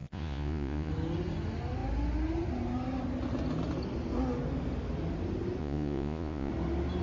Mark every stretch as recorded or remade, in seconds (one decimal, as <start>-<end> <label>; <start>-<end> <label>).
0.0-0.9 remade; 0.9-5.6 recorded; 5.6-6.5 remade; 6.5-7.0 recorded